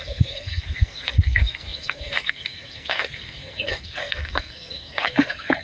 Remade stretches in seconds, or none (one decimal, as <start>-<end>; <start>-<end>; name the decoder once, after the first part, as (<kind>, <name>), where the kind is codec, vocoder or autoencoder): 0.0-5.6 (codec, SNAC)